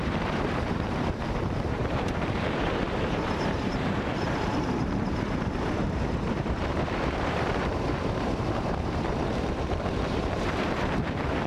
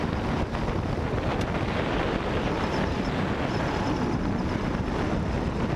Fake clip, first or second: first